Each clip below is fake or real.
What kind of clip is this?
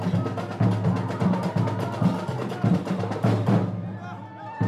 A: real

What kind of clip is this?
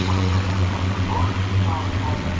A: fake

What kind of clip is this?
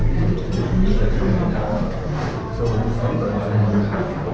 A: real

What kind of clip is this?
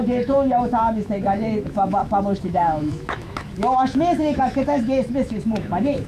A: fake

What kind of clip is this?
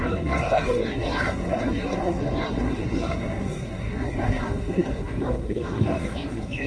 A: fake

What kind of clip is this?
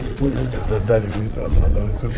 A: fake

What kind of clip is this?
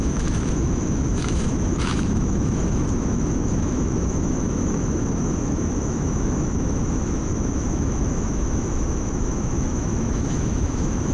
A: fake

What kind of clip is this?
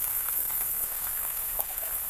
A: fake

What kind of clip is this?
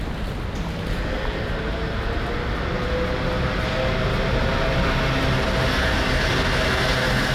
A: real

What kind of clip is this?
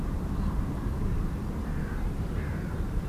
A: fake